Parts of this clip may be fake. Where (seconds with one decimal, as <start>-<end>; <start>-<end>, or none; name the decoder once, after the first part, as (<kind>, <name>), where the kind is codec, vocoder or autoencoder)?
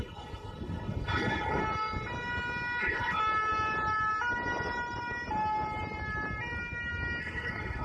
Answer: 0.0-1.6 (codec, HILCodec); 2.8-3.2; 7.2-7.8